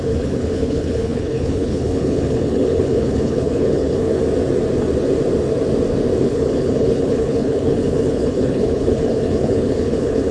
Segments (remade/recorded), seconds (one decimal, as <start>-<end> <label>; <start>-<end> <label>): 0.0-4.2 remade; 4.2-6.2 recorded; 6.2-10.3 remade

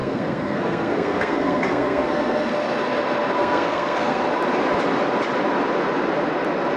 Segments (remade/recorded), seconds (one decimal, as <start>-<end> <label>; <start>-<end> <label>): 0.0-2.5 remade; 2.5-3.4 recorded; 3.4-4.3 remade; 4.3-6.8 recorded

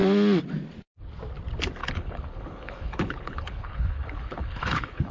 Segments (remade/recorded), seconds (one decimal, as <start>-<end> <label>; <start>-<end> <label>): 0.0-1.8 recorded; 1.8-5.1 remade

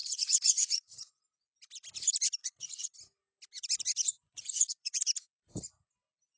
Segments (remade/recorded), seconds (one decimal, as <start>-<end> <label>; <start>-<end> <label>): 0.0-1.2 remade; 1.2-2.4 recorded; 2.4-2.9 remade; 2.9-4.1 recorded; 4.1-5.0 remade; 5.0-6.4 recorded

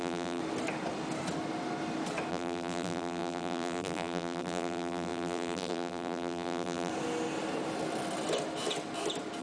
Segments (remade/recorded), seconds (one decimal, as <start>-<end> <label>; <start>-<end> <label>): 0.0-0.4 remade; 0.4-2.3 recorded; 2.3-6.9 remade; 6.9-9.4 recorded